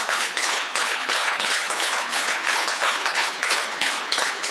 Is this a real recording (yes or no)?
no